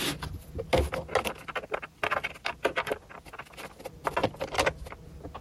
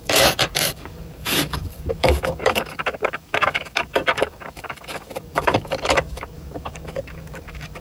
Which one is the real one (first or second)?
first